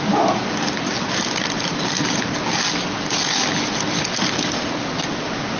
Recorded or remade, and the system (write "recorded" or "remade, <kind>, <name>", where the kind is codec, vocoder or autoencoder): recorded